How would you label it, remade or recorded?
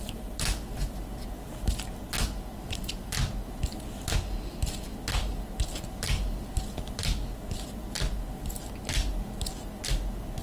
recorded